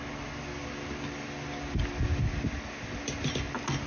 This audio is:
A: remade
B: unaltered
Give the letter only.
B